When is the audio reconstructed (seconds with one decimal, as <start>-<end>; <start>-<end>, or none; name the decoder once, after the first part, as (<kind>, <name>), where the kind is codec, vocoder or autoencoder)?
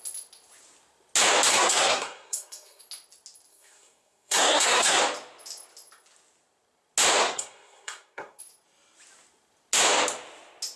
1.5-2.8 (codec, SNAC); 3.5-5.0; 7.2-8.4